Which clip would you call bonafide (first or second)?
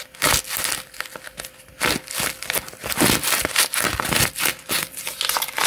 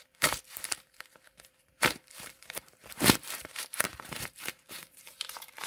first